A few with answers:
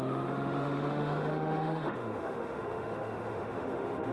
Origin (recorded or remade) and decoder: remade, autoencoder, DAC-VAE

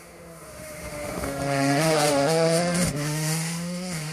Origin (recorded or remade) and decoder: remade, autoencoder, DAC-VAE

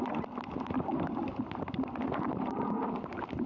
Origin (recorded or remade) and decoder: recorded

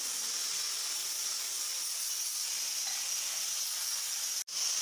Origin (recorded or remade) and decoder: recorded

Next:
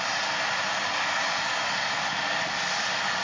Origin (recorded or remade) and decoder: recorded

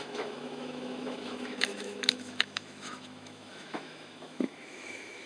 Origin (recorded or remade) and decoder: remade, autoencoder, DAC-VAE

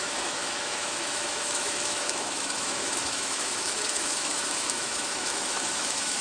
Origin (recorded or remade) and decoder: remade, autoencoder, DAC-VAE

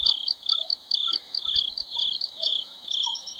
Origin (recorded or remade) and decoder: remade, autoencoder, DAC-VAE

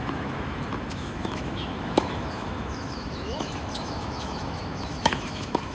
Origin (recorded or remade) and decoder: remade, autoencoder, DAC-VAE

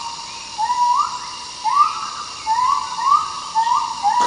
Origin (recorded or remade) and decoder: recorded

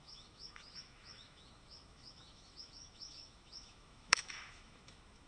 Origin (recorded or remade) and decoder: remade, autoencoder, DAC-VAE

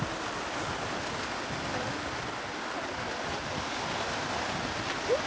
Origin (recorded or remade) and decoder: recorded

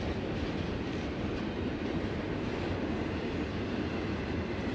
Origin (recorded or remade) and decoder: recorded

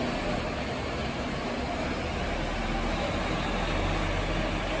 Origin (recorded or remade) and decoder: recorded